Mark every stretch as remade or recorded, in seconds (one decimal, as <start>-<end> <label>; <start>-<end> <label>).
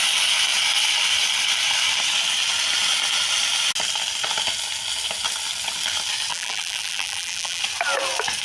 0.0-6.3 recorded; 6.3-7.6 remade; 7.6-8.4 recorded